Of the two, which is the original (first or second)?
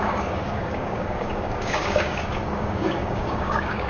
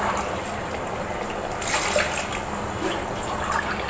second